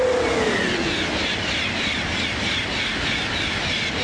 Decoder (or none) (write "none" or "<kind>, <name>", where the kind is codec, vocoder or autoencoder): none